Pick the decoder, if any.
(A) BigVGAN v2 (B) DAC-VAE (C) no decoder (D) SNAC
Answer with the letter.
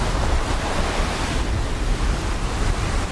A